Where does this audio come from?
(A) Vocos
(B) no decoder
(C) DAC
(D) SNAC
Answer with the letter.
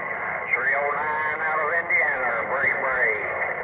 B